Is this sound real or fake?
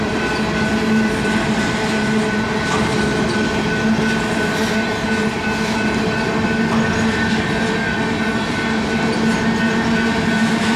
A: real